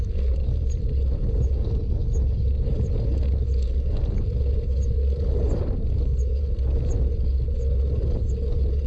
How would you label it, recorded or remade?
recorded